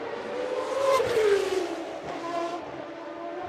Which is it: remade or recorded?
recorded